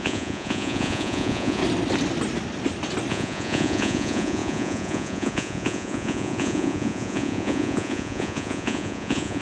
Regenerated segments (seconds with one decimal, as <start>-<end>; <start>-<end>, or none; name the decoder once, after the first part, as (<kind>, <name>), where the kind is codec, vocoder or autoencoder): 0.0-1.6 (vocoder, Vocos); 3.1-9.4